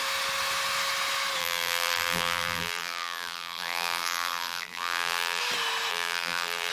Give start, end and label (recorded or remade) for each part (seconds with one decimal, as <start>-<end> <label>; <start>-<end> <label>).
0.0-1.4 recorded; 1.4-5.4 remade; 5.4-5.9 recorded; 5.9-6.7 remade